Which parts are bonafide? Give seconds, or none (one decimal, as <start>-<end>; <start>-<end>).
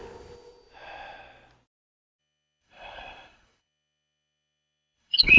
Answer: 0.0-2.2